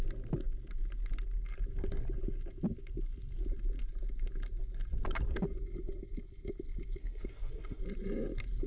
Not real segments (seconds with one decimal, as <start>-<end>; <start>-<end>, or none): 7.0-7.8